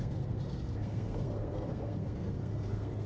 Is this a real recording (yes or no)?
no